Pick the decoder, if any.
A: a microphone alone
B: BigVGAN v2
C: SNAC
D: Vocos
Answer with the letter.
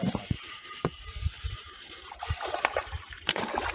B